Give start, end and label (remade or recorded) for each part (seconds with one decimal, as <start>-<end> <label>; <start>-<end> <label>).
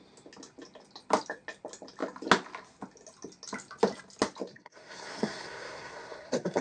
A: 0.0-4.5 recorded; 4.5-6.6 remade